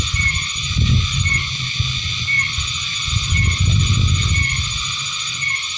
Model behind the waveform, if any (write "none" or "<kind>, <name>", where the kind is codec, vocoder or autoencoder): none